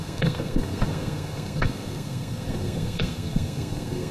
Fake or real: fake